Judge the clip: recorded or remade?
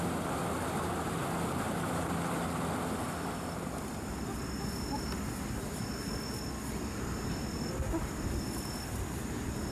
recorded